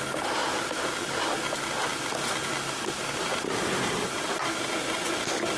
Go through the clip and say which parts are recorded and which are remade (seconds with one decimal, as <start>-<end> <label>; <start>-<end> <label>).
0.0-5.6 recorded